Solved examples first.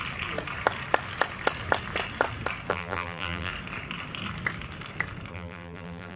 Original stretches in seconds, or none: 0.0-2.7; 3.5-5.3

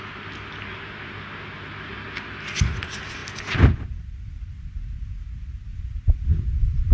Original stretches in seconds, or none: 0.0-3.2; 4.3-5.7